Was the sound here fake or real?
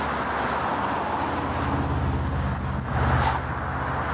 real